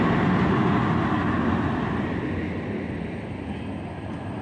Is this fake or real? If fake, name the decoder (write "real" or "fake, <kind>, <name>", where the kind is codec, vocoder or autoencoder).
real